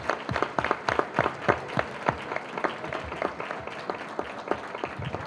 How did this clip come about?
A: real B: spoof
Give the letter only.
A